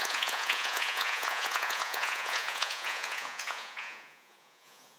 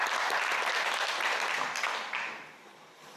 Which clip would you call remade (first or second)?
first